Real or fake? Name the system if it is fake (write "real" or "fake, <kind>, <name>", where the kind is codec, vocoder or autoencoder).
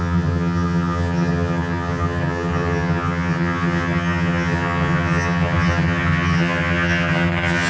fake, vocoder, HiFi-GAN